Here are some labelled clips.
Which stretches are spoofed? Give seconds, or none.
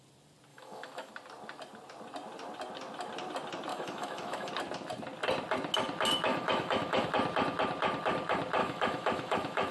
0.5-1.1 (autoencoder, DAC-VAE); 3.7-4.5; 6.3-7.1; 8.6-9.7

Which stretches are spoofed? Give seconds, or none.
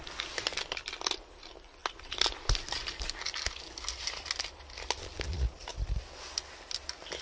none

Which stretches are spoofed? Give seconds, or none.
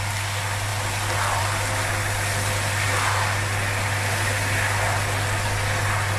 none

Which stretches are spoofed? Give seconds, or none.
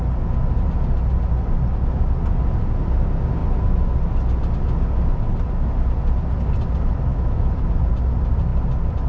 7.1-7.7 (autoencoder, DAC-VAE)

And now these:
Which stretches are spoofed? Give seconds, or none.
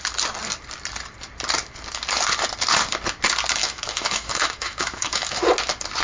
3.6-5.4 (autoencoder, DAC-VAE)